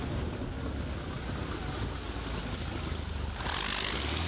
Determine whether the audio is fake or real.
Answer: real